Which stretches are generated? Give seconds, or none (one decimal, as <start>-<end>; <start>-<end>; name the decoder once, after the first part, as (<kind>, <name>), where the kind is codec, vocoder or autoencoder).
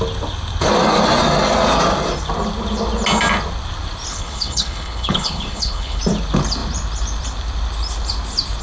4.1-6.0 (codec, HILCodec)